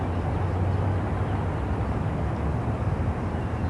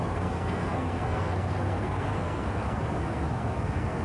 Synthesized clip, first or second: second